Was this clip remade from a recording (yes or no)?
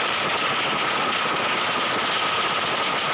no